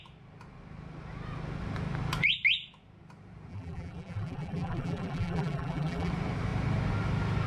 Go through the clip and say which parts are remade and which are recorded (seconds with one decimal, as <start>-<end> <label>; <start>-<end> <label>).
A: 0.0-3.5 recorded; 3.5-6.1 remade; 6.1-7.5 recorded